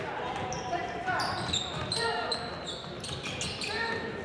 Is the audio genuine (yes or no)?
yes